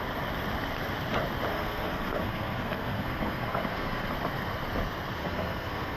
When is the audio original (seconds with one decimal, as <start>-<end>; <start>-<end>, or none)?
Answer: 0.0-1.5; 4.1-5.2